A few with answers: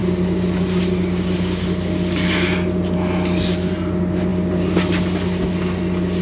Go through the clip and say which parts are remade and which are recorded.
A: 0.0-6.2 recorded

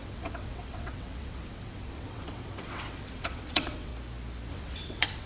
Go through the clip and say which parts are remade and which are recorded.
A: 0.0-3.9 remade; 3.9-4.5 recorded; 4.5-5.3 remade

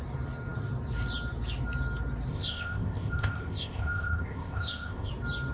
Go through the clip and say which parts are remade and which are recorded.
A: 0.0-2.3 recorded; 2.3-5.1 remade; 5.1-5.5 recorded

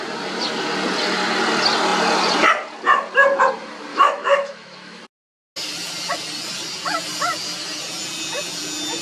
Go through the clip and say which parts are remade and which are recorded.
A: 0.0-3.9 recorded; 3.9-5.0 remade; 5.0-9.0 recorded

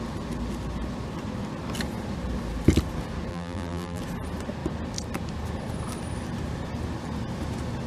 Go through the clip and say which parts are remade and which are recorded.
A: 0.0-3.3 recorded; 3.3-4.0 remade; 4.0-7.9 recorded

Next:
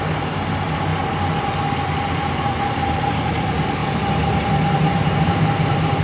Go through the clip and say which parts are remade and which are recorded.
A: 0.0-6.0 recorded